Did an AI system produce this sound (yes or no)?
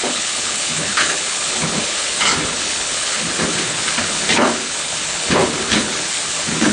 yes